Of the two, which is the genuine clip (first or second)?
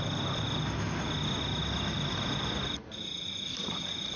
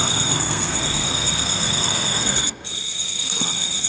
first